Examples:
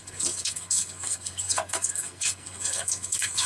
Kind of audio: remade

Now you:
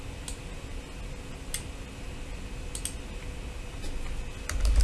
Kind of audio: recorded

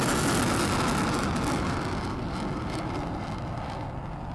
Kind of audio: recorded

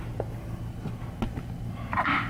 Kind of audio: recorded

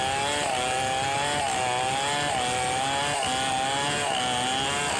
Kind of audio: recorded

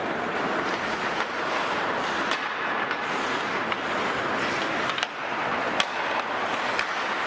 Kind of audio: recorded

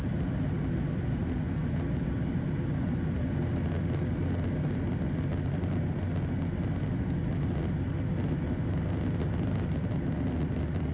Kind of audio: recorded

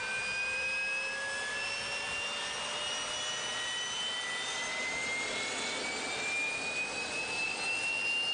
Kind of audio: recorded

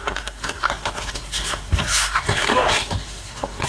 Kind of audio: remade